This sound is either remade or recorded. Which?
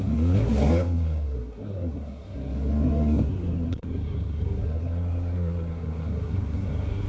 remade